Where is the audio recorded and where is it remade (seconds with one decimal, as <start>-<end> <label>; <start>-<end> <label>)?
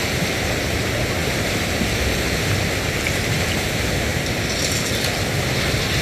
0.0-6.0 remade